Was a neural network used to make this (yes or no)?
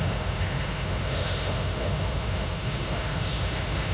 yes